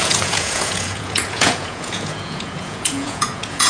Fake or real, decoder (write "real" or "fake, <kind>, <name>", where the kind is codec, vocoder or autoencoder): fake, vocoder, Vocos